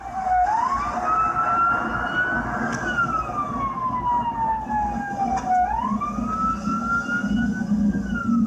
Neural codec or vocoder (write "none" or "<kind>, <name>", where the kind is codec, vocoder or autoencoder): none